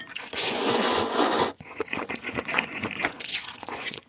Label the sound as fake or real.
fake